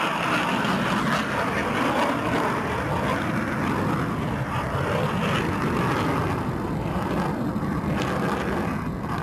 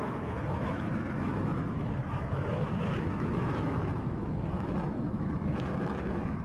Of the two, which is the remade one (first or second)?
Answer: second